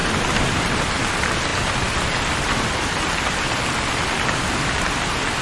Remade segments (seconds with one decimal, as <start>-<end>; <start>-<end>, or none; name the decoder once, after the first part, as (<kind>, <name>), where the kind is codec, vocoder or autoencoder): none